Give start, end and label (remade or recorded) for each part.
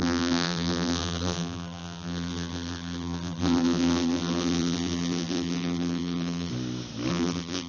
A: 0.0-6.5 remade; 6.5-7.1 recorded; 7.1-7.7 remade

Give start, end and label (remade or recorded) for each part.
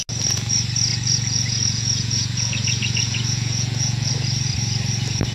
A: 0.0-0.9 recorded; 0.9-4.1 remade; 4.1-5.3 recorded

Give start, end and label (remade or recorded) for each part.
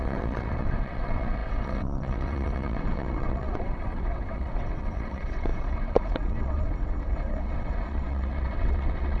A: 0.0-9.2 remade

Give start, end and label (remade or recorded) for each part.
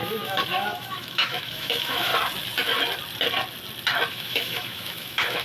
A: 0.0-2.1 remade; 2.1-4.1 recorded; 4.1-5.4 remade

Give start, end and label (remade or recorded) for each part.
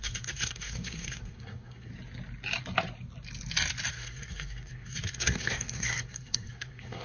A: 0.0-1.9 remade; 1.9-3.9 recorded; 3.9-7.0 remade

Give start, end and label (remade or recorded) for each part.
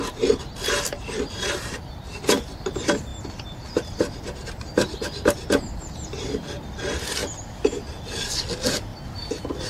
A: 0.0-3.1 recorded; 3.1-3.9 remade; 3.9-9.7 recorded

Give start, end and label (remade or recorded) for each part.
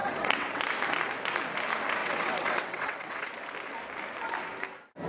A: 0.0-0.6 remade; 0.6-2.0 recorded; 2.0-3.3 remade; 3.3-5.1 recorded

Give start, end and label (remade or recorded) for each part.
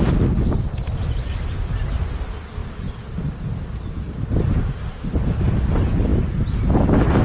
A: 0.0-7.2 recorded